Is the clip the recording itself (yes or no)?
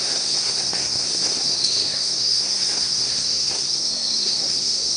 no